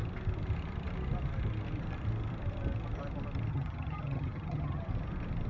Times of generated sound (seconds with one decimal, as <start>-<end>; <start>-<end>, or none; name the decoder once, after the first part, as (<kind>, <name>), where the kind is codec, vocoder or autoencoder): 3.5-4.9 (vocoder, HiFi-GAN)